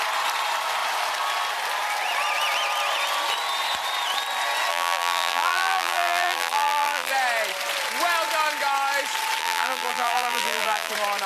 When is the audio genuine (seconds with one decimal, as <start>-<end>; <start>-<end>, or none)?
0.0-4.7; 7.1-9.4; 10.9-11.3